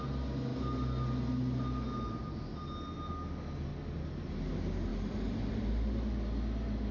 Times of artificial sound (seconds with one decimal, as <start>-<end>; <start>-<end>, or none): 3.7-4.5